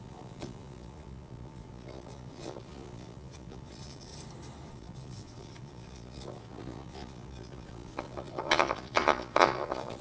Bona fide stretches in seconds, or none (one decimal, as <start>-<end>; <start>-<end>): 4.1-4.7